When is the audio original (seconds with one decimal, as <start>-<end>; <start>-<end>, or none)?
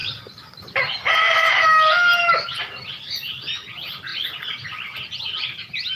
0.0-5.9